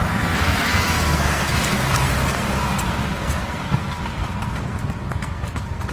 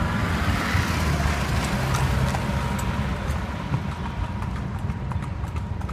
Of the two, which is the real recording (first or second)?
second